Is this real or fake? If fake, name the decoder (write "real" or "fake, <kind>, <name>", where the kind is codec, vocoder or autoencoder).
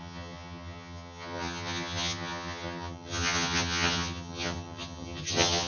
fake, vocoder, HiFi-GAN